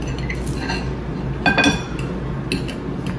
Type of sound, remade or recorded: recorded